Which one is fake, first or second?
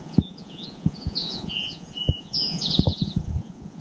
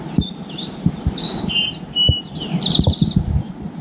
first